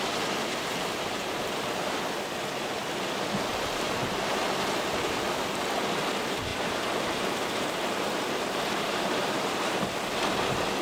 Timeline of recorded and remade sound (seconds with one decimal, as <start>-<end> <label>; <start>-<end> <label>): 0.0-0.4 recorded; 0.4-1.9 remade; 1.9-3.5 recorded; 3.5-4.3 remade; 4.3-6.5 recorded; 6.5-9.8 remade; 9.8-10.8 recorded